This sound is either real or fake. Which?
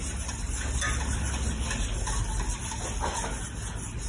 real